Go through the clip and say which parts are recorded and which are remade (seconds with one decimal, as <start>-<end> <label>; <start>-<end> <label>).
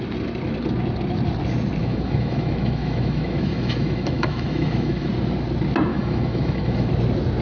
0.0-1.8 recorded; 1.8-5.1 remade; 5.1-5.9 recorded; 5.9-6.9 remade; 6.9-7.4 recorded